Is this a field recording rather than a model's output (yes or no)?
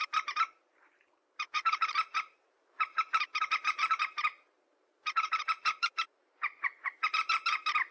no